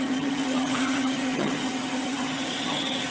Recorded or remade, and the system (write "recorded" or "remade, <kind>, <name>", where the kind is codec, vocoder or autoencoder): remade, vocoder, HiFi-GAN